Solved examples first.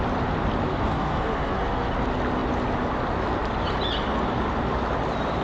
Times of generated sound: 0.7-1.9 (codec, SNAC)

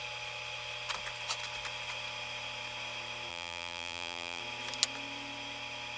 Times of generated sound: 3.3-4.4 (vocoder, BigVGAN v2)